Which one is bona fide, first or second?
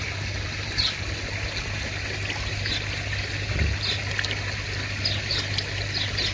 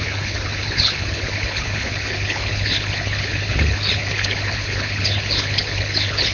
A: first